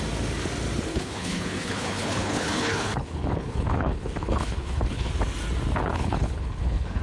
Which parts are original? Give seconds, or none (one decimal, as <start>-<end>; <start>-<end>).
0.0-0.9; 5.1-5.8